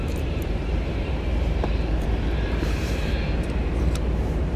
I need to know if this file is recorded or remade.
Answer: remade